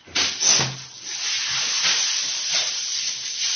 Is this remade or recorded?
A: recorded